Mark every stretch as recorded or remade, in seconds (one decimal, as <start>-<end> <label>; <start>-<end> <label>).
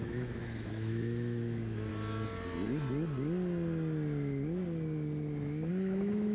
0.0-1.9 remade; 1.9-5.7 recorded; 5.7-6.3 remade